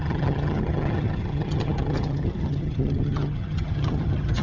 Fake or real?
fake